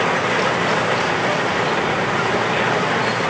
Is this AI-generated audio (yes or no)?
no